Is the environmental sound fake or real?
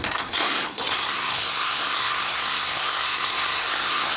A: fake